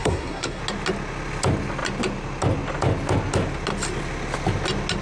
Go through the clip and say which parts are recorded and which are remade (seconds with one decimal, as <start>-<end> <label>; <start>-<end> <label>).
0.0-0.6 remade; 0.6-5.0 recorded